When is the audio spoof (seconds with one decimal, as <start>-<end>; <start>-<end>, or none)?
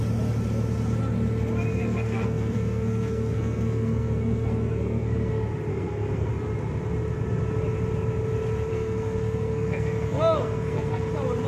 1.7-5.3; 5.7-6.3; 8.7-11.1